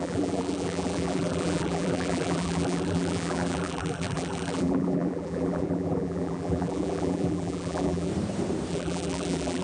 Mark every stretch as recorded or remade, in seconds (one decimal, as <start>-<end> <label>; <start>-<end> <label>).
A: 0.0-8.1 remade; 8.1-8.7 recorded; 8.7-9.6 remade